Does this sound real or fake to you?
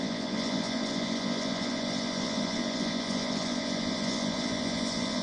fake